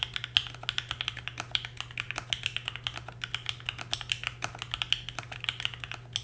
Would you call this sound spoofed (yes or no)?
no